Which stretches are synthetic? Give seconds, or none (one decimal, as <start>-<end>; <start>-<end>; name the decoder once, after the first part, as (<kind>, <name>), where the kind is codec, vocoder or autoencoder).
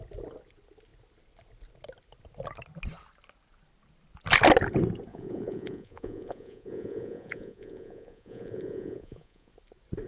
5.1-9.5 (vocoder, Vocos)